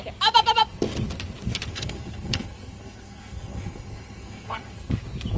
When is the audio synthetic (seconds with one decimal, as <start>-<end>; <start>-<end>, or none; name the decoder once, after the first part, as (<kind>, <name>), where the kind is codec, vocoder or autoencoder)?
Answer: 1.7-4.9 (codec, SNAC)